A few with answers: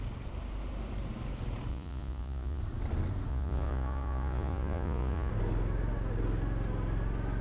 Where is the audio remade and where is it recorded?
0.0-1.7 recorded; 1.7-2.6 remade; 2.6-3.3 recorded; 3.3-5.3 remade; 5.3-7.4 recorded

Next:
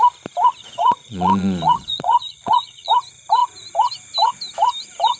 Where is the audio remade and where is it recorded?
0.0-0.6 recorded; 0.6-2.9 remade; 2.9-5.2 recorded

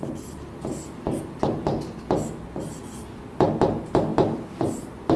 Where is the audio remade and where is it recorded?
0.0-5.2 recorded